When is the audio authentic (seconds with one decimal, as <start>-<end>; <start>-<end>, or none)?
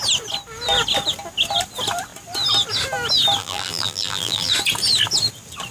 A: 0.0-3.4; 4.5-5.7